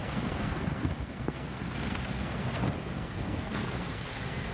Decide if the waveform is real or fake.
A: fake